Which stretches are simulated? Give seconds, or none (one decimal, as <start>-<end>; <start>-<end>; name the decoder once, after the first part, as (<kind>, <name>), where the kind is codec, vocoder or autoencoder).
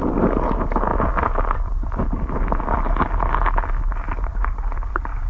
none